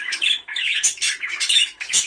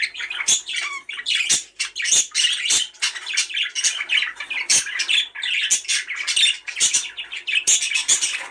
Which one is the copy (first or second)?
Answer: first